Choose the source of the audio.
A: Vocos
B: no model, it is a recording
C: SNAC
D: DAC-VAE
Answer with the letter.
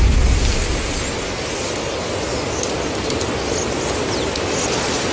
B